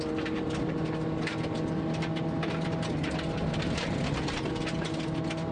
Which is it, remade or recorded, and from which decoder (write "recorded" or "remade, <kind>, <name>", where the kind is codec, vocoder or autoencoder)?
recorded